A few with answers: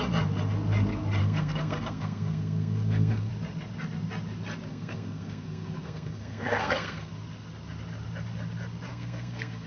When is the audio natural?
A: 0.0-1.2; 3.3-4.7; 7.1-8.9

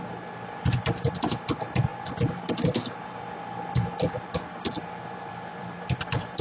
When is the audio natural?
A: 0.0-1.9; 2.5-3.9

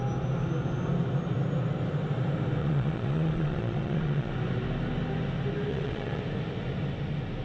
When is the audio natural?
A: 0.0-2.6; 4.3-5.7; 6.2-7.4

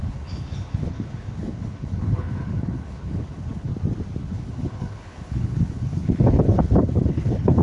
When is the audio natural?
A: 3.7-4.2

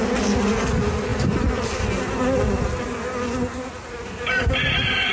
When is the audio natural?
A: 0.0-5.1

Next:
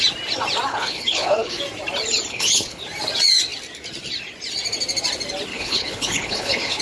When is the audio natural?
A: 0.0-0.7; 1.6-2.3; 2.8-5.5

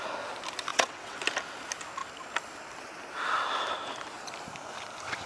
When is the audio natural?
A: 0.0-0.7; 1.2-5.3